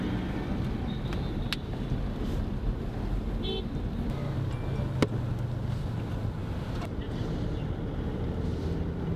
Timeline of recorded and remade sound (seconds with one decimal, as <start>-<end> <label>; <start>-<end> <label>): 0.0-9.2 recorded